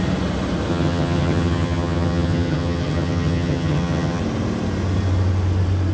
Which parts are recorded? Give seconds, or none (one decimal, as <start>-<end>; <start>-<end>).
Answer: 0.0-0.7; 4.2-5.9